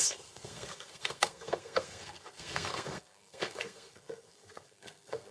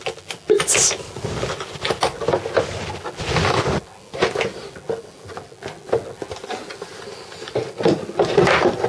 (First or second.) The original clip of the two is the second